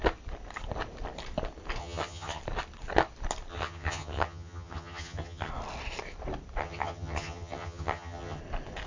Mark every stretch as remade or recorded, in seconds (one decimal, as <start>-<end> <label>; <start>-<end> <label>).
0.0-1.8 recorded; 1.8-2.4 remade; 2.4-3.5 recorded; 3.5-5.5 remade; 5.5-6.6 recorded; 6.6-8.4 remade; 8.4-8.9 recorded